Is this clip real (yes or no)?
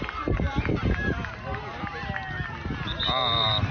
yes